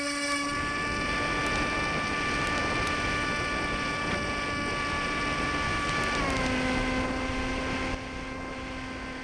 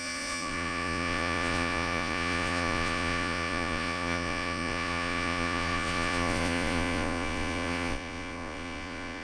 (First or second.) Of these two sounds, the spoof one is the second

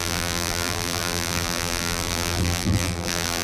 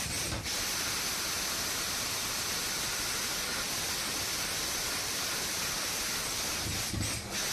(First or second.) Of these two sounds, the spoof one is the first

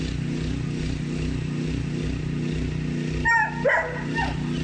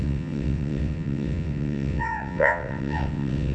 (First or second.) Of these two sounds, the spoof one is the second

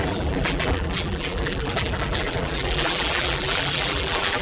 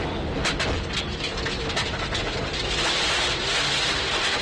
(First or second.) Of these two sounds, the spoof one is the first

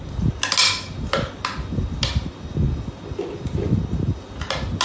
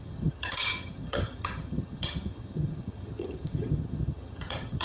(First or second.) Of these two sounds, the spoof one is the second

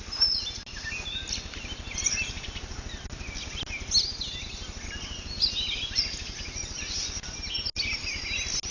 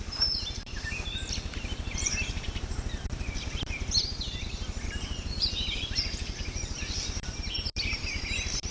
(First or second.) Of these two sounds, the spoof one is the second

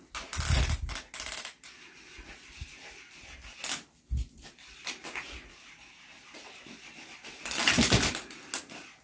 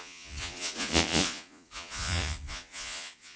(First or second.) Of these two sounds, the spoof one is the second